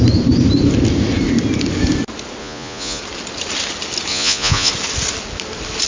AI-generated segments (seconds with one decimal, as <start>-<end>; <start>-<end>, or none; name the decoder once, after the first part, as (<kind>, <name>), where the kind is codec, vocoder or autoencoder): 2.4-3.0 (vocoder, Vocos); 4.1-4.7